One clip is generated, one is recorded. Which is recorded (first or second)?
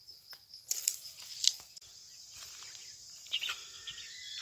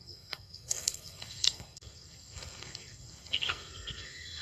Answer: first